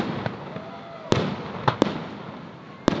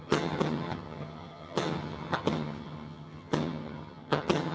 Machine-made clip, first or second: second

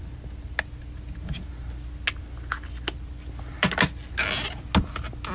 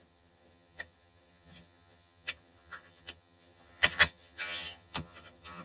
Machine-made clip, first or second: second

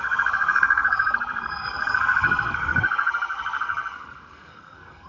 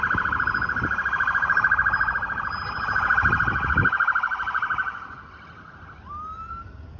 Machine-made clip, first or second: first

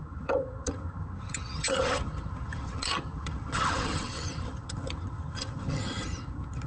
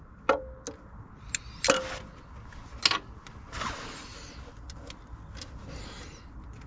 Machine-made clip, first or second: first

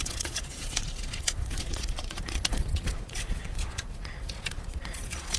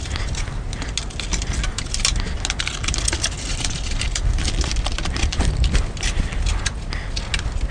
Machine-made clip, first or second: first